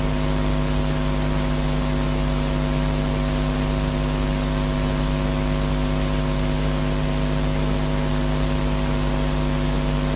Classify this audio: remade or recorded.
recorded